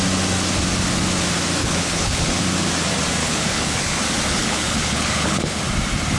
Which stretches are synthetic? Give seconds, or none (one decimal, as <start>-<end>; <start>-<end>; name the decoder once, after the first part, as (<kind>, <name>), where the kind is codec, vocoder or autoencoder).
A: 1.6-2.4 (codec, HILCodec); 3.2-4.0; 4.4-5.6